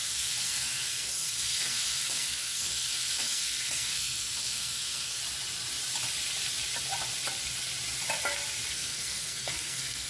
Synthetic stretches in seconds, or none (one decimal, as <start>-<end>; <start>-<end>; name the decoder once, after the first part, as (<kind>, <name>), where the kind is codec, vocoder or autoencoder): 0.0-5.2 (codec, SNAC); 8.7-10.1